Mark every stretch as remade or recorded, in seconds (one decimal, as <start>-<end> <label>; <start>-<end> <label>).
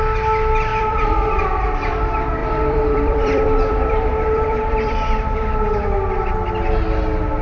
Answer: 0.0-0.7 recorded; 0.7-1.4 remade; 1.4-2.4 recorded; 2.4-5.6 remade; 5.6-7.4 recorded